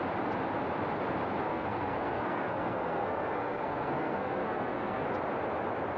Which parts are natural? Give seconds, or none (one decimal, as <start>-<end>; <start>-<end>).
0.0-1.5; 5.0-6.0